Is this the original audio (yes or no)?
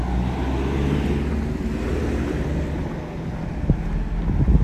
yes